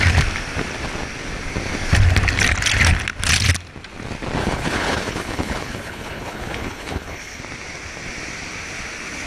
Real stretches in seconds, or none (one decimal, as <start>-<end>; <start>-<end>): 0.0-4.4; 7.4-9.3